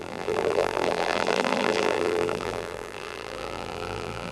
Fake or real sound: fake